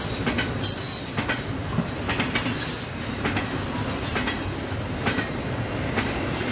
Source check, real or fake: real